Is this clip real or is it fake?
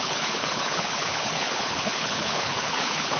fake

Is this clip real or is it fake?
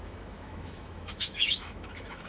fake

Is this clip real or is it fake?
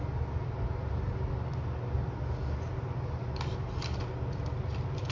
real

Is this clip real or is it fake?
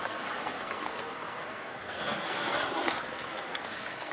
fake